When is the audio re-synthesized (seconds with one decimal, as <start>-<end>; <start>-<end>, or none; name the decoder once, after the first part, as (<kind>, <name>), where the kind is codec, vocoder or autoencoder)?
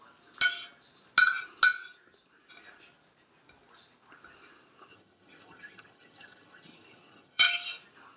4.9-7.4 (vocoder, HiFi-GAN)